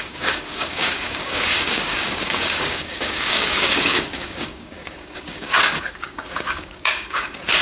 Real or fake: fake